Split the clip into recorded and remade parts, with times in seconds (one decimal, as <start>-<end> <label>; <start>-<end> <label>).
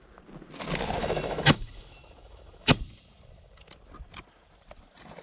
0.0-1.0 recorded; 1.0-2.7 remade; 2.7-5.2 recorded